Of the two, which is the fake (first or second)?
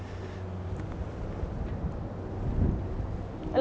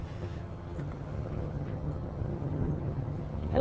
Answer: second